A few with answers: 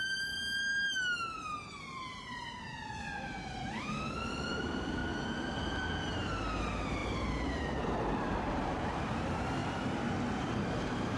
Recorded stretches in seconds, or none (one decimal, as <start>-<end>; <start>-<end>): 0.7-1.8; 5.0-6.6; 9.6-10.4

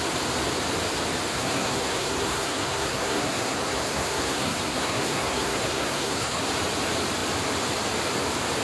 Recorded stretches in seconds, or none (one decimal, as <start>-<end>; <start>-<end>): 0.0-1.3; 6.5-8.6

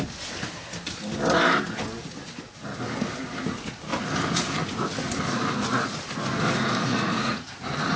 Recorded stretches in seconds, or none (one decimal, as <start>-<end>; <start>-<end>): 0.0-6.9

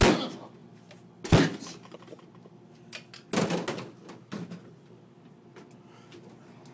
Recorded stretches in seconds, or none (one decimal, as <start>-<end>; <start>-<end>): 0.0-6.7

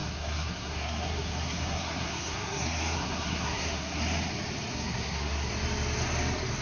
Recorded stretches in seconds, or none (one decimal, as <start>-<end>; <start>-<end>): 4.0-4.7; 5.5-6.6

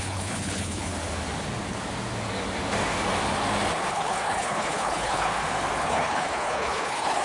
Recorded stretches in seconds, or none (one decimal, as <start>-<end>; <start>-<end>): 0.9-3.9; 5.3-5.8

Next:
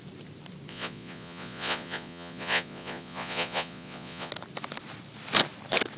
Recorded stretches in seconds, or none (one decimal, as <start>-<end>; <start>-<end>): 0.0-0.7; 4.3-6.0

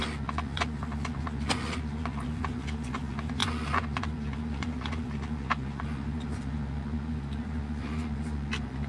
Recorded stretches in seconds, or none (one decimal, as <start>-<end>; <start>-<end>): none